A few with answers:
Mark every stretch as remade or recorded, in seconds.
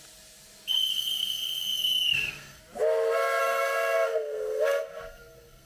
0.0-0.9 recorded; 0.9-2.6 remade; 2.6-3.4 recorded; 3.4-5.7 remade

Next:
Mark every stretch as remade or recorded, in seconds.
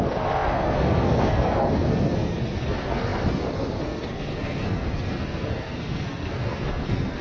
0.0-7.2 remade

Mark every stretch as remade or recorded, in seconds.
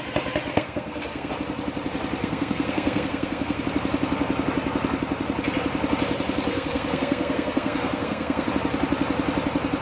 0.0-0.5 recorded; 0.5-1.3 remade; 1.3-2.2 recorded; 2.2-3.6 remade; 3.6-6.5 recorded; 6.5-8.5 remade; 8.5-9.8 recorded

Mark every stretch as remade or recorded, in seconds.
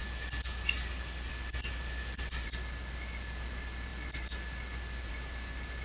0.0-5.8 recorded